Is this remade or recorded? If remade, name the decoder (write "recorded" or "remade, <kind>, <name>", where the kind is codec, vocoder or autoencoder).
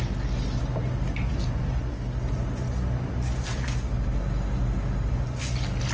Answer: recorded